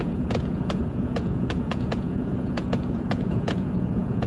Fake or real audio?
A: fake